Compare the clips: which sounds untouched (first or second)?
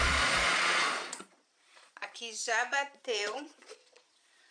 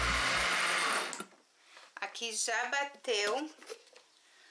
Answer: second